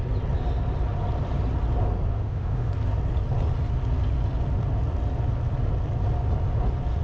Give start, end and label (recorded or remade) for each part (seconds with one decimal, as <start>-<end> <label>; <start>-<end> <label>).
0.0-2.1 recorded; 2.1-2.7 remade; 2.7-7.0 recorded